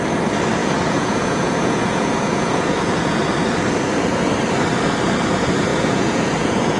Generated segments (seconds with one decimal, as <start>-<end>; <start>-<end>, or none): 0.6-3.2; 5.7-6.8